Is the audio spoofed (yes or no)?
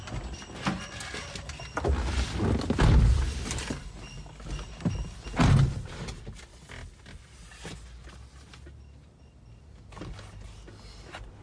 no